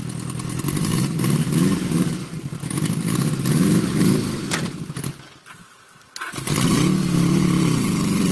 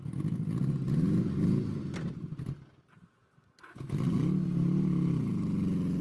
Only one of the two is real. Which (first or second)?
second